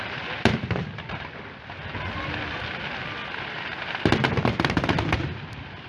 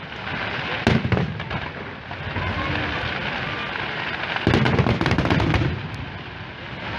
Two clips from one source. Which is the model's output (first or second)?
first